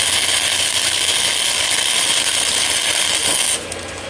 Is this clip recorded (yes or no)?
yes